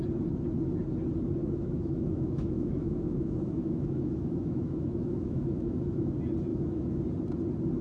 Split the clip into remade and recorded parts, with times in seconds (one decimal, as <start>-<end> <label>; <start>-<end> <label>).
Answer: 0.0-1.4 recorded; 1.4-6.1 remade; 6.1-6.5 recorded; 6.5-7.0 remade; 7.0-7.8 recorded